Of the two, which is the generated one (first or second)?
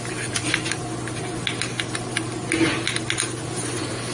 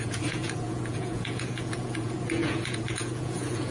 second